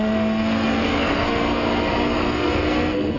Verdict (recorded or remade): remade